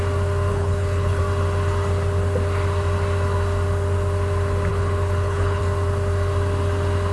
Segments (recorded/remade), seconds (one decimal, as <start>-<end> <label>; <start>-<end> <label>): 0.0-0.5 recorded; 0.5-1.2 remade; 1.2-4.7 recorded; 4.7-5.6 remade; 5.6-7.1 recorded